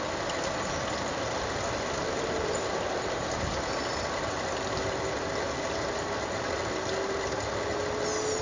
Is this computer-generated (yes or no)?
no